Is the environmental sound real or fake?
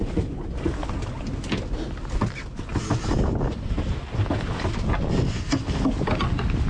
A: real